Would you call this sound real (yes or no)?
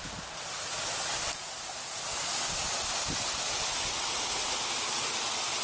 yes